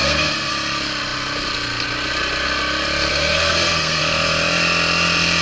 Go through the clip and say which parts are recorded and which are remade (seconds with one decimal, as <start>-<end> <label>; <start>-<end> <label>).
0.0-0.5 remade; 0.5-3.1 recorded; 3.1-4.0 remade; 4.0-5.4 recorded